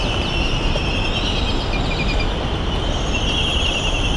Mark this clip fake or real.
real